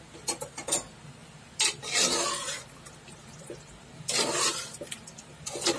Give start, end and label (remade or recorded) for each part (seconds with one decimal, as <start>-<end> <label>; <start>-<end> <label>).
0.0-5.8 recorded